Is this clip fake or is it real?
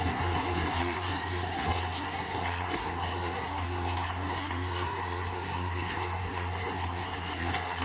fake